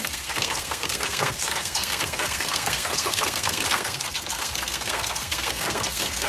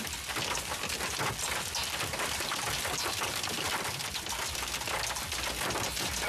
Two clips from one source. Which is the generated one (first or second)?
first